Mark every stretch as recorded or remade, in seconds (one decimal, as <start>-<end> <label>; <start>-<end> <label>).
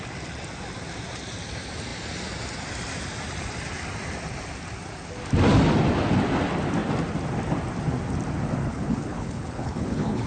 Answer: 0.0-8.6 recorded; 8.6-10.3 remade